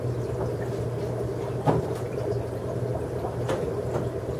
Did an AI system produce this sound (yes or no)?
yes